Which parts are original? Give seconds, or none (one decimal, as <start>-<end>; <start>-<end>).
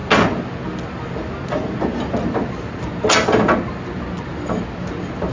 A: 0.0-5.3